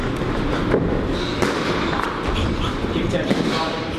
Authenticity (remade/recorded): remade